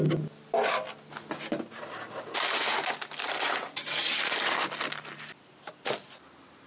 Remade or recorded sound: recorded